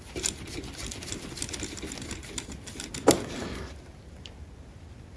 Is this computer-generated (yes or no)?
no